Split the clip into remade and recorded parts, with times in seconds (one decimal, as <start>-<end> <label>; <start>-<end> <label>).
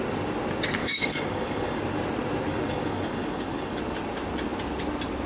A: 0.0-0.8 recorded; 0.8-1.8 remade; 1.8-2.5 recorded; 2.5-3.8 remade; 3.8-5.3 recorded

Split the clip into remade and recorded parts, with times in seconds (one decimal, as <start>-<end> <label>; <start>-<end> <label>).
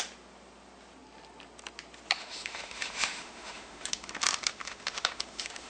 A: 0.0-2.2 recorded; 2.2-5.7 remade